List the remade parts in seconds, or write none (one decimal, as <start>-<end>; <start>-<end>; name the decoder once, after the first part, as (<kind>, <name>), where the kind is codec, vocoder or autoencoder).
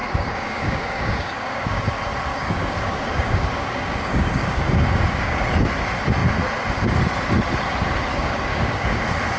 0.0-1.8 (codec, DAC); 2.3-5.5; 8.1-9.0